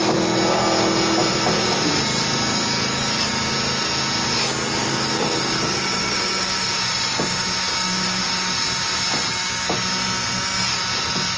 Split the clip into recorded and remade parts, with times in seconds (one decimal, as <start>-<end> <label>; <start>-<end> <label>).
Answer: 0.0-4.8 recorded; 4.8-6.7 remade; 6.7-7.7 recorded; 7.7-8.2 remade; 8.2-11.4 recorded